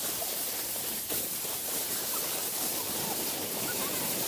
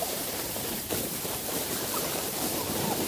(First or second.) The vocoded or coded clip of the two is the second